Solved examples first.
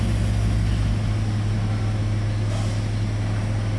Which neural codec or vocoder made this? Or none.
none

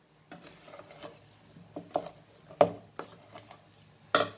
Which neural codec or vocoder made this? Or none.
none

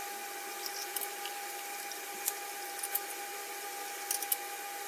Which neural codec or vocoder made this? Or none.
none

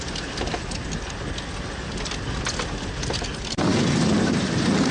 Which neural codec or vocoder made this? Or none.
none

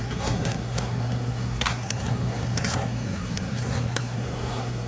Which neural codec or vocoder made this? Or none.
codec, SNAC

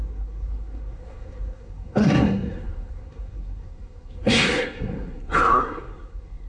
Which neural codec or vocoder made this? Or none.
codec, SNAC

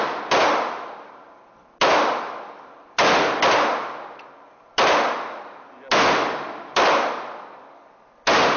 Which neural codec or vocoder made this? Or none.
none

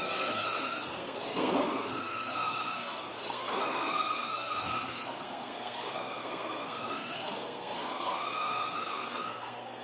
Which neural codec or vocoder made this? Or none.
codec, SNAC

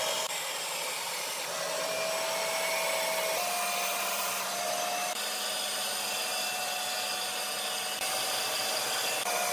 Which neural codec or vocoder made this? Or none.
none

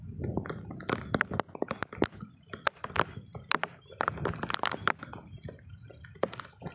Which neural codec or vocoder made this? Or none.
none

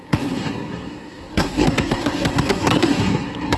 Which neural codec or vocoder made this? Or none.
codec, SNAC